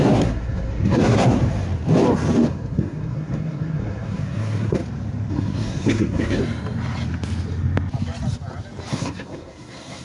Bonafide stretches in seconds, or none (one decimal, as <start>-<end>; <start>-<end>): 1.4-2.5; 4.8-5.3; 6.4-8.9